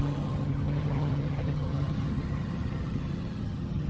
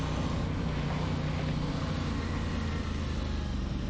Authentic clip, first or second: second